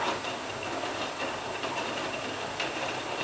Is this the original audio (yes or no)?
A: yes